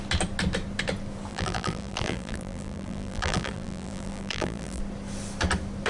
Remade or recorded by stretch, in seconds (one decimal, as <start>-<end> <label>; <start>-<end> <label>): 0.0-1.3 recorded; 1.3-4.8 remade; 4.8-5.9 recorded